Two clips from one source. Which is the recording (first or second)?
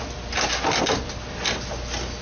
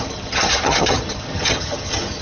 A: first